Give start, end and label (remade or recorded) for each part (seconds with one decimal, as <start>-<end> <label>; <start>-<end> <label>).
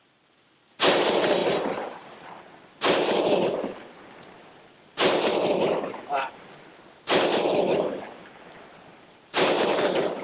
0.0-10.2 recorded